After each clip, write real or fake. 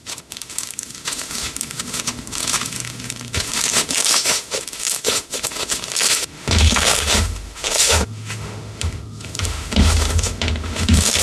fake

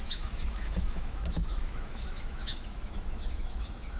fake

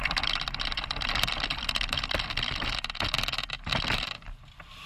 real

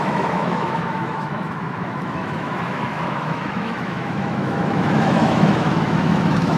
fake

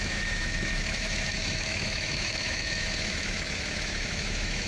fake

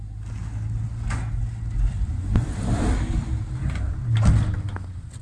real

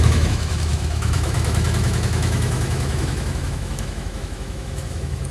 fake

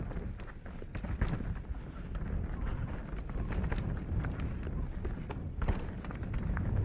real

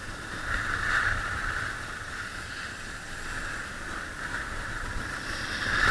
real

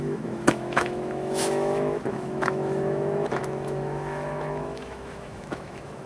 fake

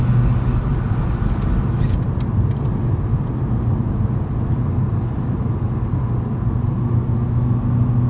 real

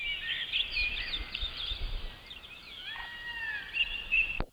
real